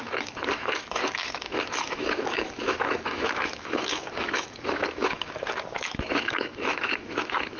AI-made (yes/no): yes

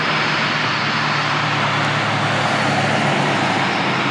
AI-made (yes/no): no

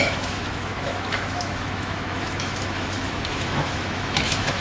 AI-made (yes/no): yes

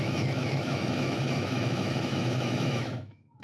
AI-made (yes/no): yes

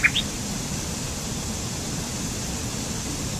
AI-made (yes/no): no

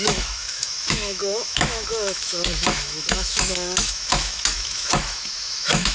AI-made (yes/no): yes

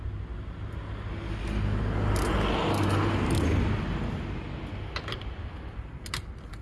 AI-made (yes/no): no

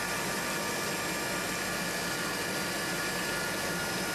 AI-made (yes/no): no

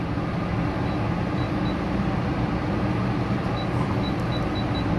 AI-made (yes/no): no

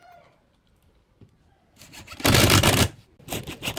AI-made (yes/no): no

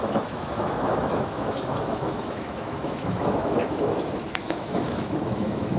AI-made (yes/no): yes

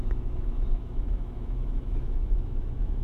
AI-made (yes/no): yes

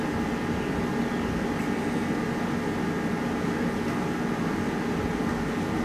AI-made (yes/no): no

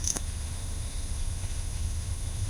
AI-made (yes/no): yes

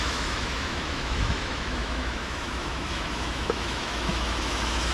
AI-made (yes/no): yes